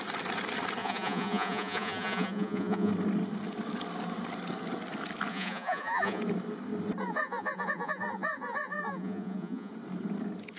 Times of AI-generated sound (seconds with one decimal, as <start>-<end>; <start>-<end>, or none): 0.8-2.9; 5.3-6.2; 7.0-9.7